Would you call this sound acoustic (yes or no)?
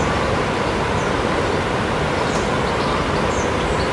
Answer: yes